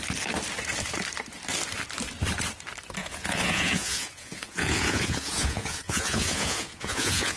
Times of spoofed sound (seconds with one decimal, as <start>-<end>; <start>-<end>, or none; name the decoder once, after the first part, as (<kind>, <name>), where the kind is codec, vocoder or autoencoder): 3.0-7.4 (vocoder, Vocos)